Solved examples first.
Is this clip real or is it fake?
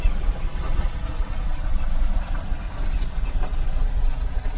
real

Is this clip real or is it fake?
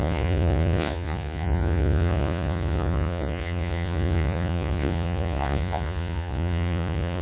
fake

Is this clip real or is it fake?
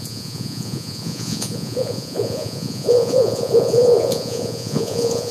fake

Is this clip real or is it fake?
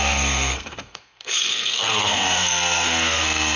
fake